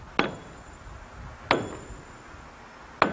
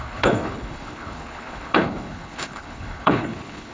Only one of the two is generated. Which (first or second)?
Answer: second